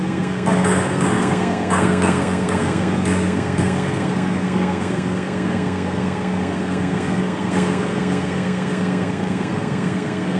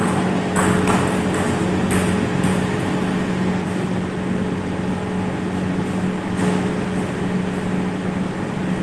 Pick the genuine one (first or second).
second